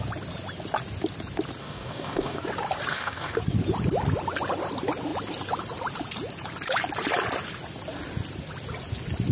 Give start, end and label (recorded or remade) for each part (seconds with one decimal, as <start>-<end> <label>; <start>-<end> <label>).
0.0-1.6 recorded; 1.6-2.4 remade; 2.4-2.9 recorded; 2.9-3.4 remade; 3.4-9.3 recorded